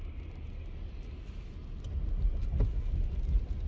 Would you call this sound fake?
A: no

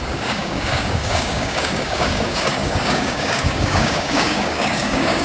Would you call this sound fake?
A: yes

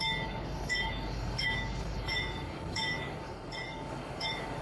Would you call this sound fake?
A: yes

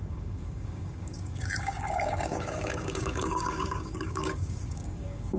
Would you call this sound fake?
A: yes